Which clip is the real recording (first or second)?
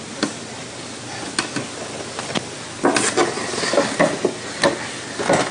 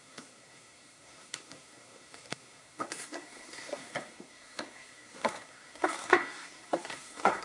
first